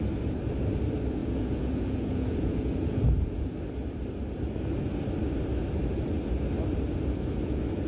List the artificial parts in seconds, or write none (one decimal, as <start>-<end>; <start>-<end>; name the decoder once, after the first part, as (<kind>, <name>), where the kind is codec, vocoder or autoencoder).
1.2-3.5 (vocoder, Vocos)